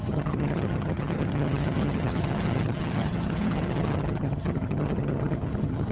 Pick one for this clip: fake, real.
fake